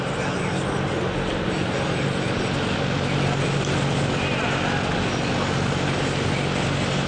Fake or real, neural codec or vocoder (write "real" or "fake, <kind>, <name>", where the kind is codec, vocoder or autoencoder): real